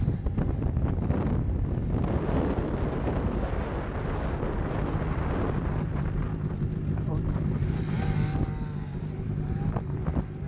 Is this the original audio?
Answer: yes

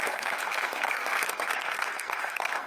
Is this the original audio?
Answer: no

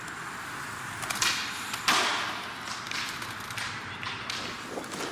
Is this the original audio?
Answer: yes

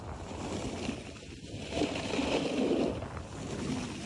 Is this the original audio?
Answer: yes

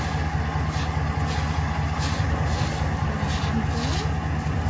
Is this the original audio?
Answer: yes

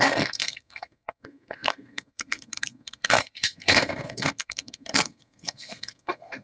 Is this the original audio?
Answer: no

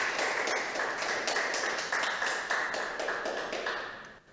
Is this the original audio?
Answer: yes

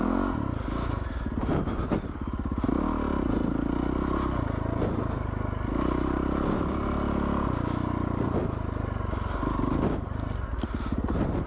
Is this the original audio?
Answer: yes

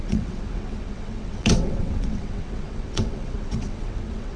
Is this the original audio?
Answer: no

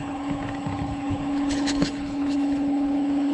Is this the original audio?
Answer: no